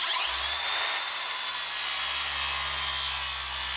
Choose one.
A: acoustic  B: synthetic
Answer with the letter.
A